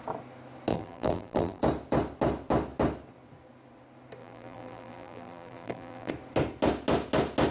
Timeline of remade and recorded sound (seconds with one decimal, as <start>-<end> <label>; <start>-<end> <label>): 0.0-0.7 recorded; 0.7-1.6 remade; 1.6-4.2 recorded; 4.2-6.1 remade; 6.1-7.5 recorded